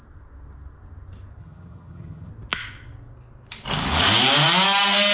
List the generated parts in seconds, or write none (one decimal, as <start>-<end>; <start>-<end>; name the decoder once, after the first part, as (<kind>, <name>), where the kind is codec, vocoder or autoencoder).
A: 1.4-2.3 (vocoder, HiFi-GAN)